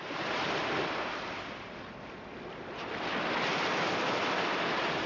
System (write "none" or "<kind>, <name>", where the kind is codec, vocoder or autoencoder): none